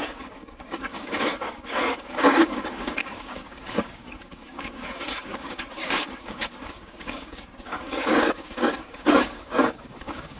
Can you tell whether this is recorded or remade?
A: remade